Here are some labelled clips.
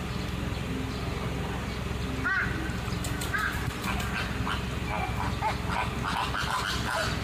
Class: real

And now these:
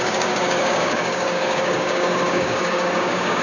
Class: fake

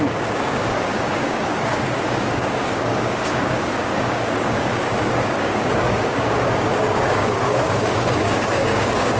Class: fake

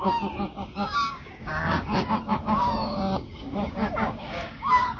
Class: fake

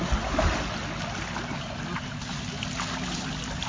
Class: real